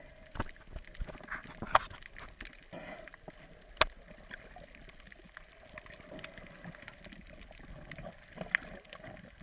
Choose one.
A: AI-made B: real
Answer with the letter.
B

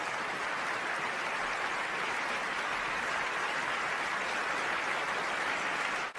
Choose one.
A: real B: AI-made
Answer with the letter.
A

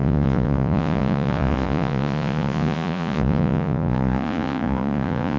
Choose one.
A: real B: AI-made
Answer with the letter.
B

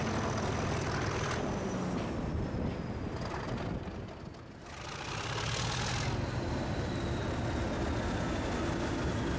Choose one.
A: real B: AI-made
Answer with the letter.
A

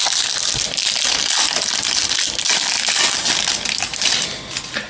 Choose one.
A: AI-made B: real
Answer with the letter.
B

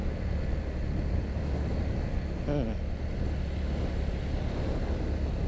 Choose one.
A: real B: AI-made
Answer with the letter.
A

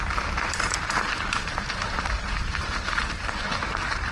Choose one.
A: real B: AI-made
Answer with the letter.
B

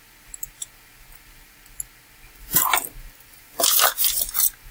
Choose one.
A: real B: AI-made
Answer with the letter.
A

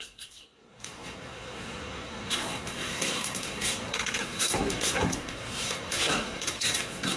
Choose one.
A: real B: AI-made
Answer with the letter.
B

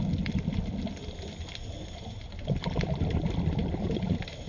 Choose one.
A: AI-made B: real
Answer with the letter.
B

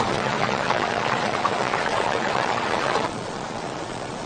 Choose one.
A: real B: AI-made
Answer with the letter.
B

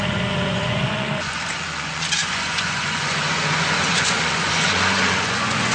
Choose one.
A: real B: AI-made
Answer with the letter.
B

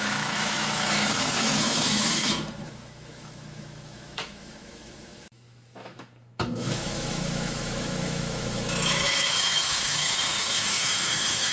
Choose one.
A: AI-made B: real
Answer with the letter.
A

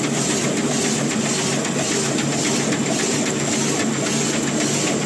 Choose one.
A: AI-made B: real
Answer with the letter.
B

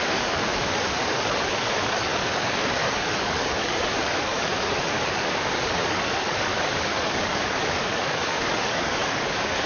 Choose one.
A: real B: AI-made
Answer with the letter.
B